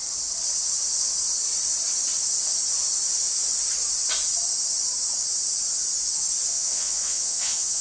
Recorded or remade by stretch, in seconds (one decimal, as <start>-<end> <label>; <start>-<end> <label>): 0.0-6.5 recorded; 6.5-7.8 remade